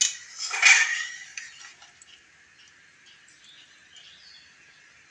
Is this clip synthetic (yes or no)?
no